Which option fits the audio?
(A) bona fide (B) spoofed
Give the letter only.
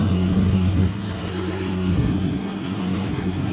B